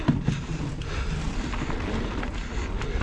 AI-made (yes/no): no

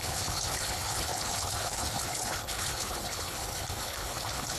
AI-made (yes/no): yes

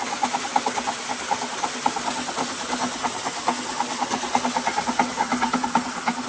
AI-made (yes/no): no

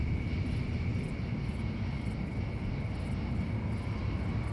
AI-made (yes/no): no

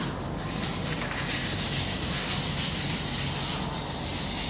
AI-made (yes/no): no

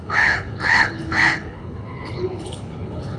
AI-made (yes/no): yes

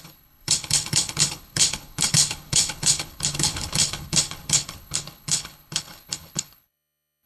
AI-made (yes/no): yes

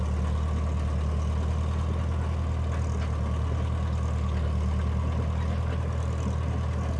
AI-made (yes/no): no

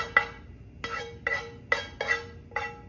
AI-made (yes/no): no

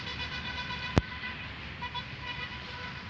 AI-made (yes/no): no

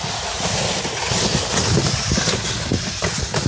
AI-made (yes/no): no